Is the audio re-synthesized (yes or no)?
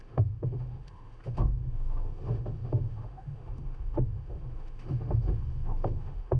yes